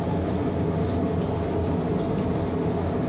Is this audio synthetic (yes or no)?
no